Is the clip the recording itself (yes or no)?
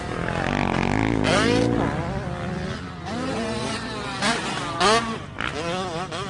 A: yes